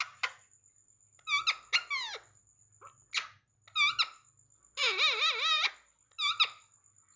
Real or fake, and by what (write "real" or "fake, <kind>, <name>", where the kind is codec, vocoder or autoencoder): real